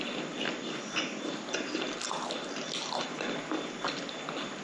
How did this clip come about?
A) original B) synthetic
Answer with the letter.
A